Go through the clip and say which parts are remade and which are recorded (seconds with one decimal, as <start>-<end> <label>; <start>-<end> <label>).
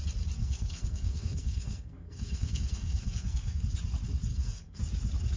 0.0-0.4 recorded; 0.4-3.6 remade; 3.6-4.3 recorded; 4.3-4.8 remade; 4.8-5.4 recorded